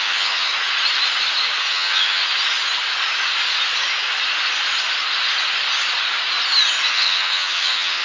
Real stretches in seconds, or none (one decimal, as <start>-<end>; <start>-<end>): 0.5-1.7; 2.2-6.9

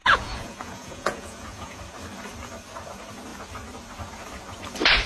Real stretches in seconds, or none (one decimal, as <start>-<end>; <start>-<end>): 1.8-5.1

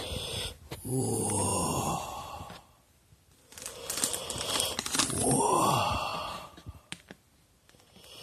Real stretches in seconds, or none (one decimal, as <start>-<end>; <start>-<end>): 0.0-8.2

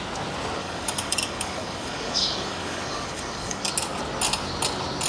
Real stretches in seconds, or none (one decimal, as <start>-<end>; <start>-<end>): 0.0-0.6; 3.7-5.1

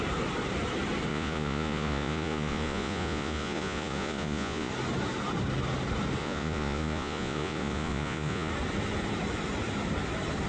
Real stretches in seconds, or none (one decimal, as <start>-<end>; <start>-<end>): 0.0-1.1; 4.7-6.2; 8.5-10.5

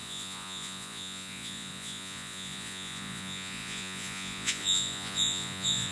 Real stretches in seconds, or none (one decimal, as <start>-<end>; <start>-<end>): none

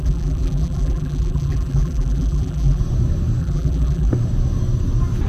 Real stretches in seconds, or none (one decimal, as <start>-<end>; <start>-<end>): 2.8-3.4; 4.1-5.3